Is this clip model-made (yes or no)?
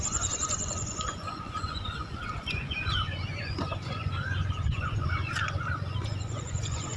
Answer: yes